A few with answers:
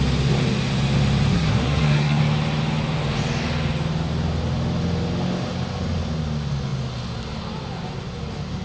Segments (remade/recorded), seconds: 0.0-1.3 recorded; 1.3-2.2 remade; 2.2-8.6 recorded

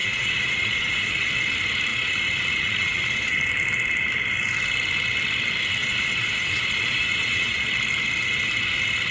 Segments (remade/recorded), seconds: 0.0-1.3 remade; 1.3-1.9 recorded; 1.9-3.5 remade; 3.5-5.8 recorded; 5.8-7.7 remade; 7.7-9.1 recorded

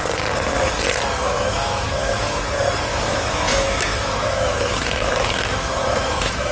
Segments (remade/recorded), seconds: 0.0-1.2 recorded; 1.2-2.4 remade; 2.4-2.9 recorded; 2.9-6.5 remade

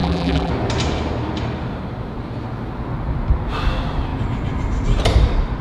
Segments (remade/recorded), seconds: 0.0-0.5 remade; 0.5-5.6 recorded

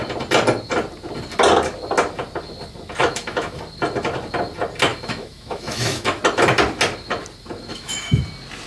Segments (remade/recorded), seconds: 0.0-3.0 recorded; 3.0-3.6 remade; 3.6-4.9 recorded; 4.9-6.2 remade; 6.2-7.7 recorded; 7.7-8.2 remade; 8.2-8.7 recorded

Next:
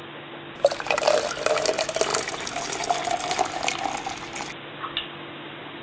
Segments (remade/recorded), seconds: 0.0-5.8 recorded